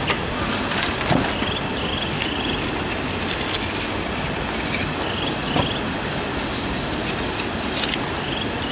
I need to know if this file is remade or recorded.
recorded